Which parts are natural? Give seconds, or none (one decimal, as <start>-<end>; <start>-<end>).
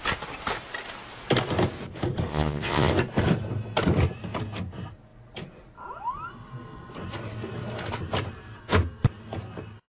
0.0-2.3; 2.9-9.9